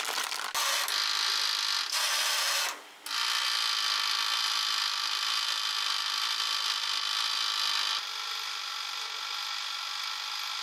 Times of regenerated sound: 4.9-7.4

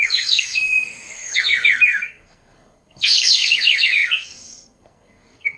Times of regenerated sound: 0.0-5.6

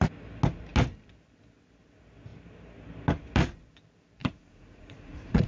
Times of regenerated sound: 4.2-5.5

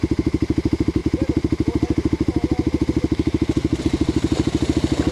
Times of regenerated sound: 0.0-1.0; 3.8-5.1

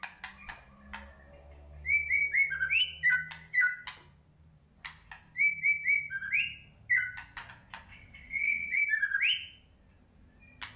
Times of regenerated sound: 7.9-8.8

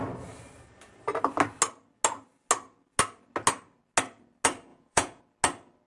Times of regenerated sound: 4.7-5.2

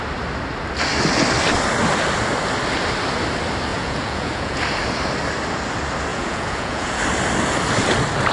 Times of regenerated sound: 3.7-4.6; 6.1-7.0